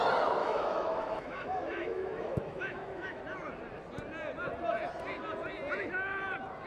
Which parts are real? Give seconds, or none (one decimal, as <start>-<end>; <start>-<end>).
0.0-0.4; 3.2-6.7